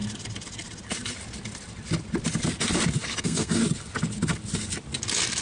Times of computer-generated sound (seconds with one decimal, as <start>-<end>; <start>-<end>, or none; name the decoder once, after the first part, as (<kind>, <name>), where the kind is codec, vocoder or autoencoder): 3.2-3.6 (codec, SNAC)